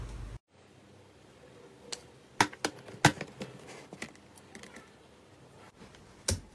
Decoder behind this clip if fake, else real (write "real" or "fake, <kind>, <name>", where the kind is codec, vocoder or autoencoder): real